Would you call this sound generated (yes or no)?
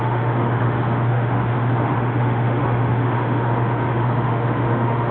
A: yes